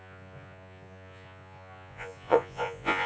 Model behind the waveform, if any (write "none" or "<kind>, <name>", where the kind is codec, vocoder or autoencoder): vocoder, Vocos